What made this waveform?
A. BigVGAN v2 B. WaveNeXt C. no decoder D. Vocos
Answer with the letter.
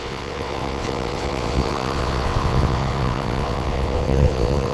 B